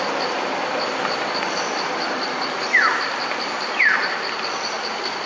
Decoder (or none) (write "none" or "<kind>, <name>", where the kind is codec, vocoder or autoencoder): none